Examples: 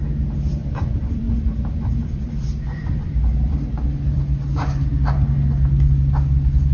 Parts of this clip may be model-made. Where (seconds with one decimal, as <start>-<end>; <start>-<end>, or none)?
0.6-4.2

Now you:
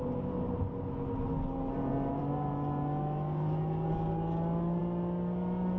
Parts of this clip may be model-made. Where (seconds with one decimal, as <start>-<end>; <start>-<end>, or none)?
none

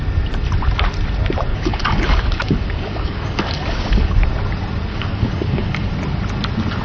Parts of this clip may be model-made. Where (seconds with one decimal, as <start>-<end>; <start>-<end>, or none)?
1.5-4.2; 4.9-5.9

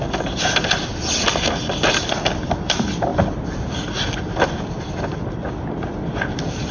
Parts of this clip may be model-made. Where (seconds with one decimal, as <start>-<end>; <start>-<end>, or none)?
none

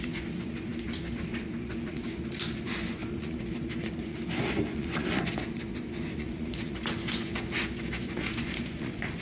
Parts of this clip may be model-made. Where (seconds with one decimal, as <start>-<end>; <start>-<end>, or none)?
0.0-9.2